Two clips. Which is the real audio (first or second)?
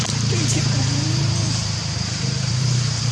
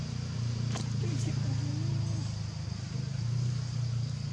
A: second